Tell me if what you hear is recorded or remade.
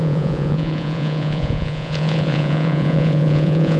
remade